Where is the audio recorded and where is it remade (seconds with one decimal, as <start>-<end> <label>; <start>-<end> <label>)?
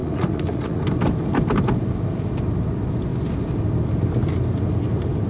0.0-0.8 remade; 0.8-5.3 recorded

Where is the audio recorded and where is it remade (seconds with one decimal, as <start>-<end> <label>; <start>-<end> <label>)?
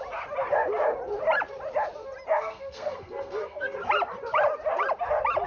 0.0-2.3 recorded; 2.3-3.8 remade; 3.8-5.5 recorded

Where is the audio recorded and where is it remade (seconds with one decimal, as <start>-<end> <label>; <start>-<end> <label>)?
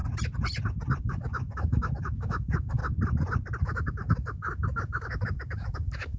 0.0-1.0 recorded; 1.0-2.8 remade; 2.8-3.6 recorded; 3.6-6.2 remade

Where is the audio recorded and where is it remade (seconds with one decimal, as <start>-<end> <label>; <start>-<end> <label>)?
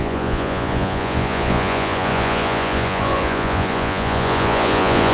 0.0-5.1 remade